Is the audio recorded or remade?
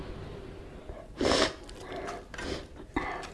recorded